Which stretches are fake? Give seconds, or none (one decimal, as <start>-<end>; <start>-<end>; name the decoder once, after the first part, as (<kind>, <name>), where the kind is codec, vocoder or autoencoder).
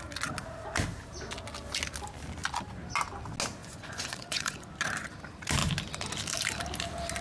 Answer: 3.6-4.7 (vocoder, Vocos)